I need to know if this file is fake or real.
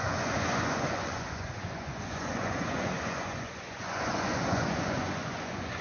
fake